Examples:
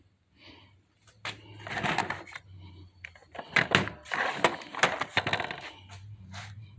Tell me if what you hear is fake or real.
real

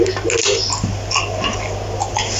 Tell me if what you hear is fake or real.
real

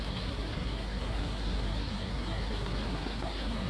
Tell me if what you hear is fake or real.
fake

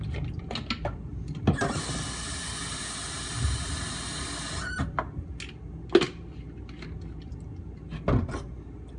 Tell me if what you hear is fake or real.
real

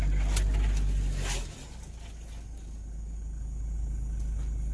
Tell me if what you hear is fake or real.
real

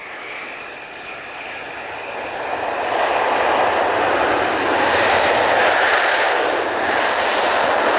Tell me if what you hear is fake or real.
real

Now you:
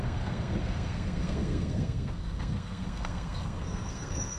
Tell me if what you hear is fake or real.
fake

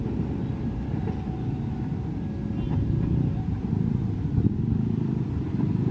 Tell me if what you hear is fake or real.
real